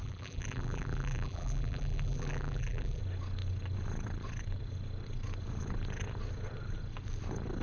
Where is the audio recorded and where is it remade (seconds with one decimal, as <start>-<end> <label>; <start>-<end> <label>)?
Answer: 0.0-3.0 remade; 3.0-7.6 recorded